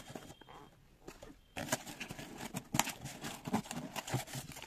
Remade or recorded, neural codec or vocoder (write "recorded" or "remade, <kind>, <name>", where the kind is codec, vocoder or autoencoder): recorded